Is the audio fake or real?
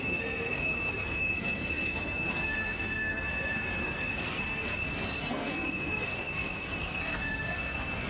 fake